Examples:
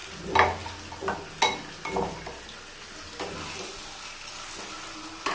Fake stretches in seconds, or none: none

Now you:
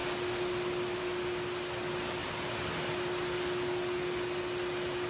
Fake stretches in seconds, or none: none

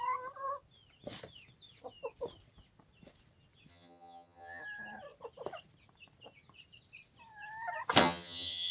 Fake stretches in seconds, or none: 3.7-4.6 (vocoder, HiFi-GAN); 8.0-8.7

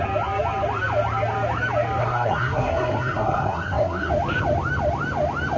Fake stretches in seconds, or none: 2.0-4.1 (codec, SNAC)